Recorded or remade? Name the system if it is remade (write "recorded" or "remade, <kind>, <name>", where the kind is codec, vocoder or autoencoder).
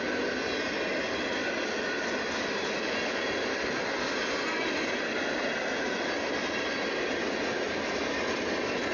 recorded